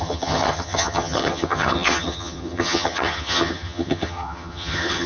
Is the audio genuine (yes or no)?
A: no